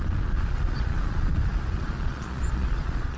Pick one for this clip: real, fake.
fake